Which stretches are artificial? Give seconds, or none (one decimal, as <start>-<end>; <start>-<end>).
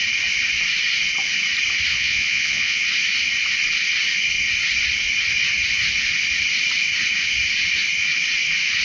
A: 1.9-2.8